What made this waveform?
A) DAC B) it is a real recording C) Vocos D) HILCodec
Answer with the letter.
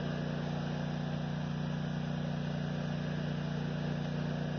B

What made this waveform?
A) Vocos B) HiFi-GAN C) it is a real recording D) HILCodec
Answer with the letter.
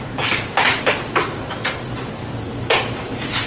C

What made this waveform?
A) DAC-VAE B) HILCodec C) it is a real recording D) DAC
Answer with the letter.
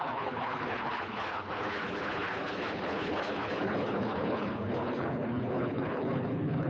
B